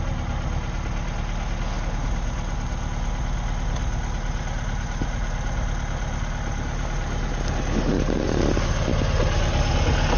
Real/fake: real